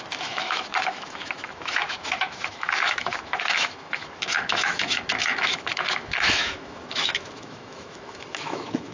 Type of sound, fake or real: fake